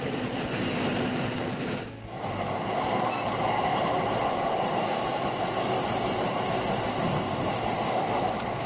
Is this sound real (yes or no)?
yes